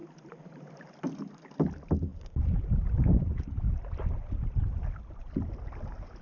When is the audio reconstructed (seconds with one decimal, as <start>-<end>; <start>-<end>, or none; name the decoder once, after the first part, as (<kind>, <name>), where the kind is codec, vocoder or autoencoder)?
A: none